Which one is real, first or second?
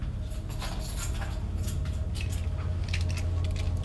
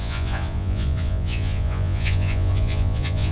first